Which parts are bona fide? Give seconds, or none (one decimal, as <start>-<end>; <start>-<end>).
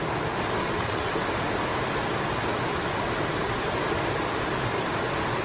0.0-0.6; 1.1-5.4